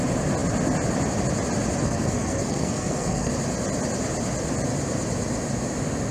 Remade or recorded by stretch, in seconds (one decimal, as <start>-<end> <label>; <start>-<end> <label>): 0.0-1.8 recorded; 1.8-3.3 remade; 3.3-6.1 recorded